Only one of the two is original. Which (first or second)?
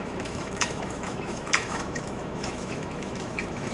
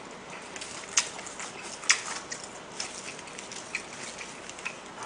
second